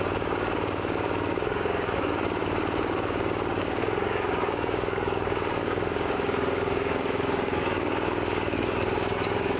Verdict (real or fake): fake